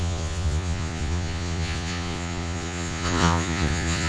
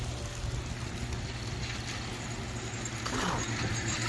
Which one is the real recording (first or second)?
second